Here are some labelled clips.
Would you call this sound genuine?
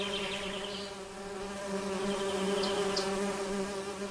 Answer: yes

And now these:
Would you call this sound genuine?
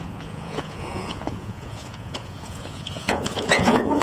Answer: no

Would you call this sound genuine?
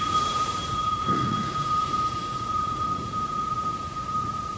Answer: no